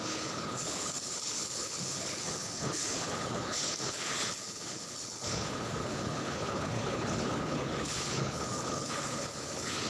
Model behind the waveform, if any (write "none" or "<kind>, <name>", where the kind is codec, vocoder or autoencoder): codec, HILCodec